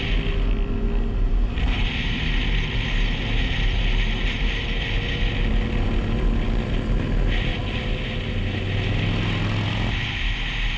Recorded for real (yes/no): yes